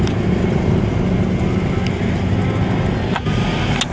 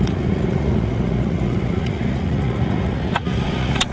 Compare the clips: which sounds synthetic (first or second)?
second